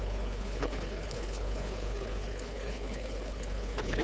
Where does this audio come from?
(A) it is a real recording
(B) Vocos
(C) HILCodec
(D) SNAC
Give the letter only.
C